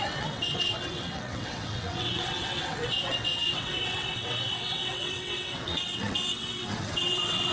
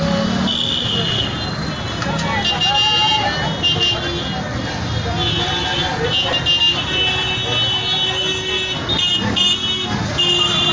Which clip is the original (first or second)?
second